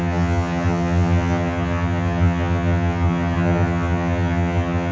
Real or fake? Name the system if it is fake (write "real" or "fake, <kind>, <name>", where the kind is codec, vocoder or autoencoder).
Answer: fake, vocoder, HiFi-GAN